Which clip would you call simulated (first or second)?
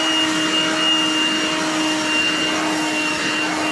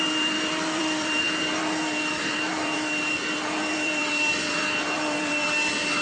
second